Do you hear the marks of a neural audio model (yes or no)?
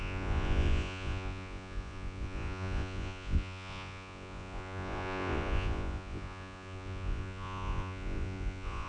yes